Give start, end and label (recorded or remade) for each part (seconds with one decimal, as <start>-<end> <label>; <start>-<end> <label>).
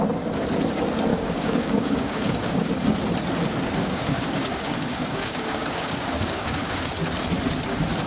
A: 0.0-1.1 recorded; 1.1-2.7 remade; 2.7-3.8 recorded; 3.8-7.0 remade; 7.0-8.1 recorded